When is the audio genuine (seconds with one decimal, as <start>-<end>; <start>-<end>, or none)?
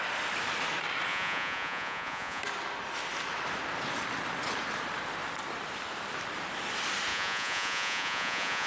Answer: 0.0-1.1; 2.4-7.1